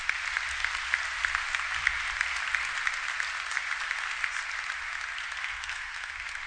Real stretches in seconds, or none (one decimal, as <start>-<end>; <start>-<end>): 0.0-5.4; 6.1-6.5